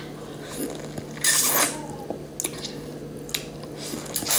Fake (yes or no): no